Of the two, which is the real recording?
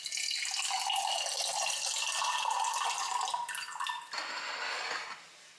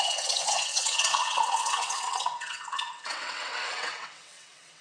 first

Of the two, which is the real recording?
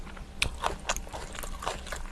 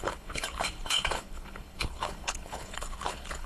first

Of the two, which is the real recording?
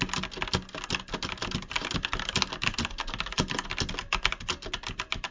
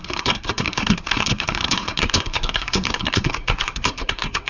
first